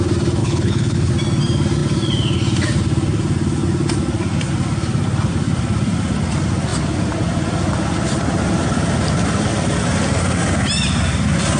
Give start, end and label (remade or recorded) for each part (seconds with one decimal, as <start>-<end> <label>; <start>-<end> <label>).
0.0-0.4 recorded; 0.4-1.1 remade; 1.1-11.6 recorded